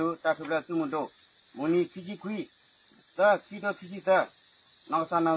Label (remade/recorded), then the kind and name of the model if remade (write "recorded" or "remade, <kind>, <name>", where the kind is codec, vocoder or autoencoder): recorded